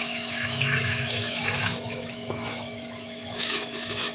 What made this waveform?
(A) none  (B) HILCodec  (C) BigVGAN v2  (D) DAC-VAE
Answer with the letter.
D